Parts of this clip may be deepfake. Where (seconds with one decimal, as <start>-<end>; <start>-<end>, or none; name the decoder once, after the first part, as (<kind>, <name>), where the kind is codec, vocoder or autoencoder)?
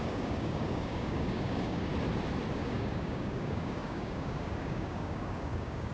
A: 0.0-1.9 (codec, DAC); 2.5-5.9